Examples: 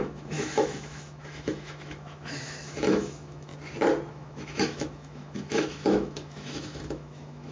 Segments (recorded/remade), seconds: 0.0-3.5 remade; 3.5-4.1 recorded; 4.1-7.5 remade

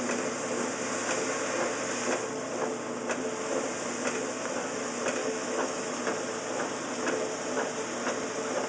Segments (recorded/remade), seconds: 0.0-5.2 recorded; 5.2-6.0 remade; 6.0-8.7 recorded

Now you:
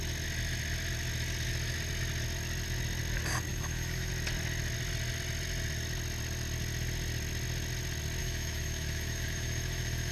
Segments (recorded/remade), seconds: 0.0-3.5 recorded; 3.5-4.1 remade; 4.1-8.2 recorded; 8.2-10.1 remade

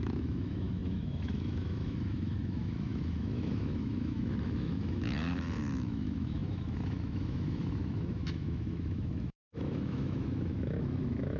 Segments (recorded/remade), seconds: 0.0-11.4 remade